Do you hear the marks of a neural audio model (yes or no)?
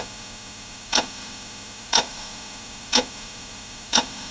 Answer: yes